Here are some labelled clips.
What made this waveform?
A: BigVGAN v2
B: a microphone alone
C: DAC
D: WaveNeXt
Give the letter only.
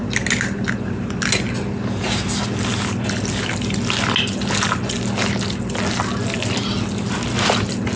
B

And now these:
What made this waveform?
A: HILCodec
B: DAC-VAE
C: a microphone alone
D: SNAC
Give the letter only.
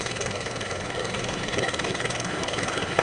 D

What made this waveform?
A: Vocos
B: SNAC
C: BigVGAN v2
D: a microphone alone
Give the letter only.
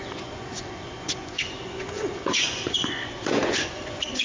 A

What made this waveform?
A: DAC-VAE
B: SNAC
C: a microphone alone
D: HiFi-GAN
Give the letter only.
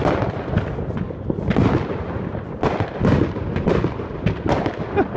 C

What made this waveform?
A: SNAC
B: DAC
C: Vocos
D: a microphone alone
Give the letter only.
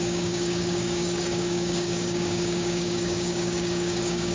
B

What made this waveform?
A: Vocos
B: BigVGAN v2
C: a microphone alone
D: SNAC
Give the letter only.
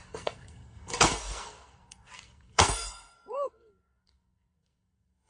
D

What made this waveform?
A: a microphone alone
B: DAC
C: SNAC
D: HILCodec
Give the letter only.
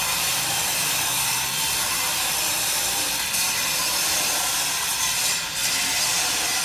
A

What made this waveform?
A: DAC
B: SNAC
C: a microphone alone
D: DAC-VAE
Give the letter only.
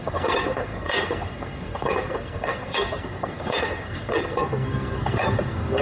B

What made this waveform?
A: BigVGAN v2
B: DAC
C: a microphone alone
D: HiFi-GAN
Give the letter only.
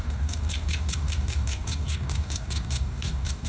B